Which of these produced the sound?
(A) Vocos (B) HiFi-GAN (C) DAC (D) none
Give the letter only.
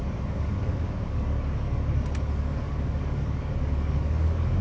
C